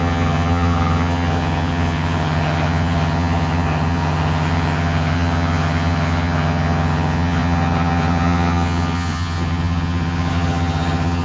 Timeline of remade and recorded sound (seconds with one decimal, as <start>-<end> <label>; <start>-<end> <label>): 0.0-11.2 remade